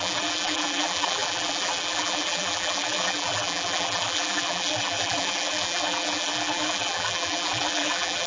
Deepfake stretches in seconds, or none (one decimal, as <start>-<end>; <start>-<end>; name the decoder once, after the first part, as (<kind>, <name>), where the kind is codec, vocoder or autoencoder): 0.0-8.3 (vocoder, BigVGAN v2)